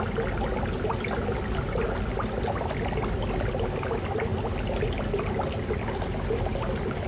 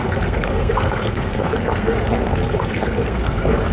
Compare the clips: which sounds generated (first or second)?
second